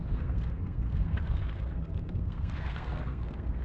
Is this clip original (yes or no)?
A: no